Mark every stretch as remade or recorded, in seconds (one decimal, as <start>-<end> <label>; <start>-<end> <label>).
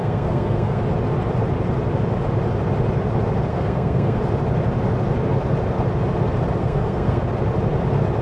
0.0-0.8 remade; 0.8-3.5 recorded; 3.5-4.2 remade; 4.2-6.6 recorded; 6.6-7.2 remade; 7.2-8.2 recorded